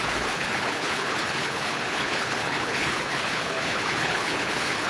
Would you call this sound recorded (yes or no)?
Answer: no